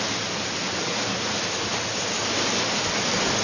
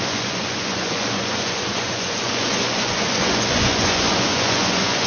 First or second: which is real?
first